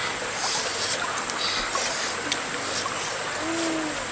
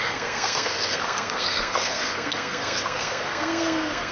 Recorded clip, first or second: first